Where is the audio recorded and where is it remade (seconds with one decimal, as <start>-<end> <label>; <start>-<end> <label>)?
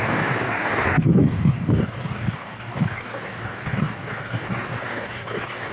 0.0-5.7 remade